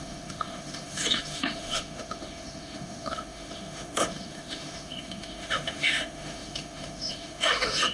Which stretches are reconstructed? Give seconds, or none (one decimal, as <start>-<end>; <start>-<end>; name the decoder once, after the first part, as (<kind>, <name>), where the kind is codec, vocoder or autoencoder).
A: 0.0-7.9 (autoencoder, DAC-VAE)